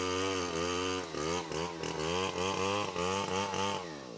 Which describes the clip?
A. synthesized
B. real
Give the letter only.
B